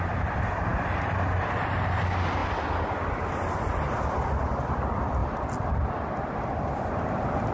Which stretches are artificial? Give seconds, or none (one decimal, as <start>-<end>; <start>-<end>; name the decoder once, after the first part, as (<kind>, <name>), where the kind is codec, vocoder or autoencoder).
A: 0.0-0.7 (vocoder, BigVGAN v2); 1.4-2.4; 4.5-5.2; 6.9-7.5